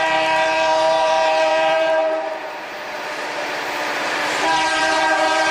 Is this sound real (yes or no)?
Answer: no